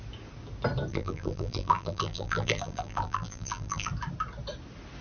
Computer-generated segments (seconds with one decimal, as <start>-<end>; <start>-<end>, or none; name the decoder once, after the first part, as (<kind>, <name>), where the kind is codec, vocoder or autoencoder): 0.9-3.9 (vocoder, BigVGAN v2)